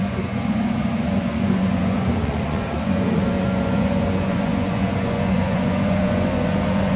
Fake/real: fake